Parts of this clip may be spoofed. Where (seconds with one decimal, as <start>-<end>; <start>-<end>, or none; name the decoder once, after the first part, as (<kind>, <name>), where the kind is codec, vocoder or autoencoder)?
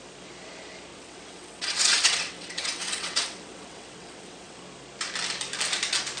0.9-4.6 (vocoder, WaveNeXt)